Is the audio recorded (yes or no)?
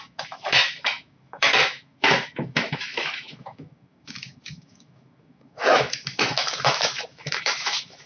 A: no